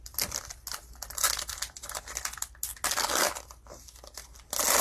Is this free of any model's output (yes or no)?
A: yes